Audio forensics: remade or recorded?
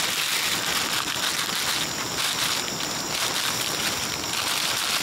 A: recorded